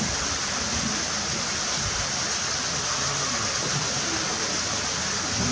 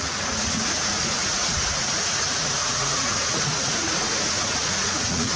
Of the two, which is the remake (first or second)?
second